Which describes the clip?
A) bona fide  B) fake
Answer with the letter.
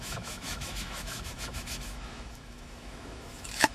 B